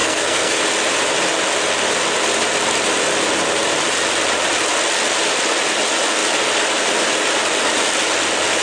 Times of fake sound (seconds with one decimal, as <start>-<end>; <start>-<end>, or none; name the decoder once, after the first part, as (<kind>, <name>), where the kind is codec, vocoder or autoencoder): 0.0-0.6 (codec, SNAC)